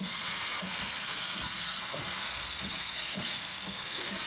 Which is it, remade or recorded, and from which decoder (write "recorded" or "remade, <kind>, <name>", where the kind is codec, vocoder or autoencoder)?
remade, codec, SNAC